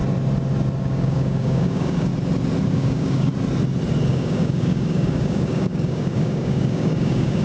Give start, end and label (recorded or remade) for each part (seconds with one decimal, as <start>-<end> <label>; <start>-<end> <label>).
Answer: 0.0-0.8 recorded; 0.8-2.1 remade; 2.1-2.7 recorded; 2.7-3.3 remade; 3.3-4.1 recorded; 4.1-7.4 remade